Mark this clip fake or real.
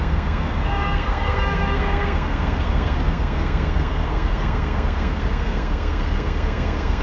fake